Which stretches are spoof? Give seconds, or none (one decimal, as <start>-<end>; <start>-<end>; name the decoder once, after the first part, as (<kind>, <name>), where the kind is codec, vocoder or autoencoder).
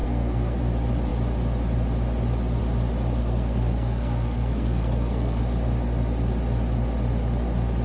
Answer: 0.0-0.6 (codec, SNAC); 3.2-5.4